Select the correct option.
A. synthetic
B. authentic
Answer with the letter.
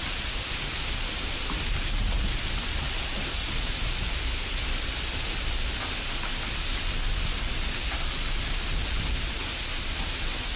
B